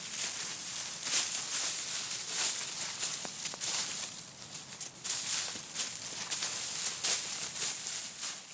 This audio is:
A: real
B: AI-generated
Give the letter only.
A